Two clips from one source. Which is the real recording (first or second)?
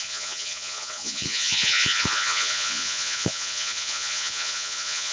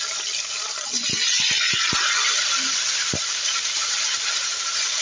second